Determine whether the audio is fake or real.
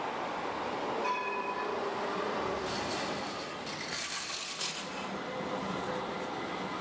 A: real